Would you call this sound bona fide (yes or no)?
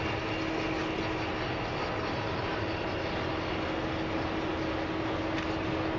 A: yes